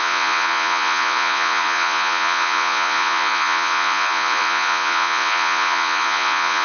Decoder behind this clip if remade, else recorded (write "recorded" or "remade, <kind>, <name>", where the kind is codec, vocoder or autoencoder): remade, vocoder, Vocos